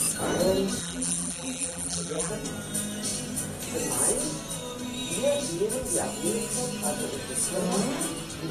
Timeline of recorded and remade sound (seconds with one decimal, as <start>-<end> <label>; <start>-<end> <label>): 0.0-0.8 recorded; 0.8-2.3 remade; 2.3-8.5 recorded